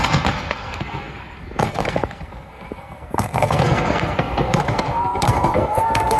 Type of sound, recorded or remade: remade